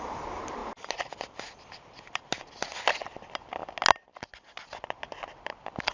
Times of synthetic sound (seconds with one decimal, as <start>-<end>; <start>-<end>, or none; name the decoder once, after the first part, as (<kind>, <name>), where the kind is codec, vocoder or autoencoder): none